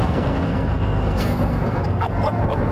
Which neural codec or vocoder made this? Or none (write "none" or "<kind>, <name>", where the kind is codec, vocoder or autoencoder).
codec, SNAC